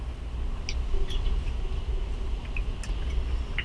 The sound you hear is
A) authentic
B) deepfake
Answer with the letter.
A